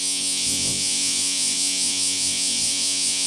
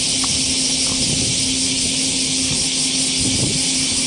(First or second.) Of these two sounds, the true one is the second